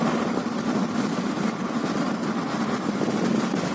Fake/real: real